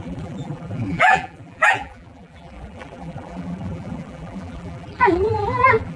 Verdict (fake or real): fake